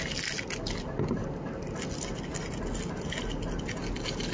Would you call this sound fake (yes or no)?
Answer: no